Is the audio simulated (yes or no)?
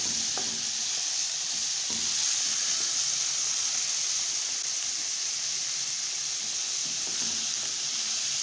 no